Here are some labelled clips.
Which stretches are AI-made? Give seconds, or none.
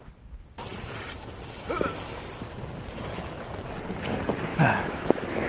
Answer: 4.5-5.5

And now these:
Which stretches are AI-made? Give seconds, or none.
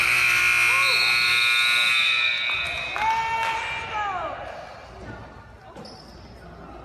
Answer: none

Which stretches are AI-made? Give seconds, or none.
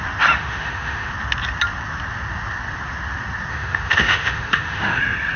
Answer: 0.4-1.1; 3.5-5.0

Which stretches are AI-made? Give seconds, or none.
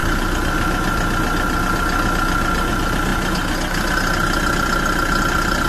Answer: none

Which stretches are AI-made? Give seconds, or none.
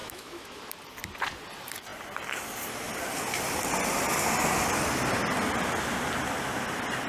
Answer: 0.0-0.6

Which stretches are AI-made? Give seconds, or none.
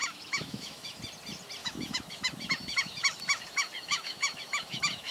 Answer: 0.0-1.0; 1.6-5.1